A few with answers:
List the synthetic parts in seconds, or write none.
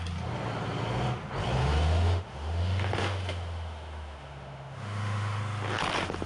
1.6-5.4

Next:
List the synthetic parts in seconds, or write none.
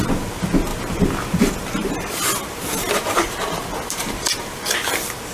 none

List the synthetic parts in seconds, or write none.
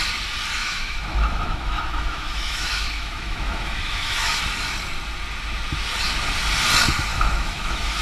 0.6-4.4; 7.1-8.0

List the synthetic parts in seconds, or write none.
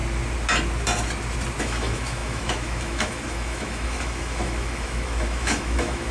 1.6-6.1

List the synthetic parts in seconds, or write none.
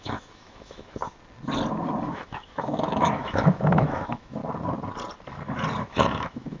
0.0-1.0; 2.1-4.4; 5.8-6.6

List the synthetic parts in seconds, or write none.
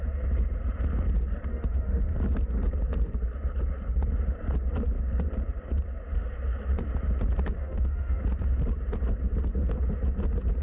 1.5-2.1; 7.6-8.2